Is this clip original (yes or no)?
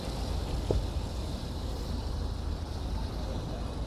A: yes